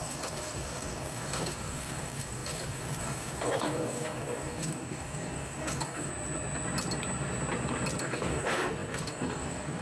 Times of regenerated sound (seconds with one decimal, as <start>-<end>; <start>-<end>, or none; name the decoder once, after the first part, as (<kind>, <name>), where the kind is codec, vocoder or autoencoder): 0.0-6.1 (codec, DAC); 8.0-9.8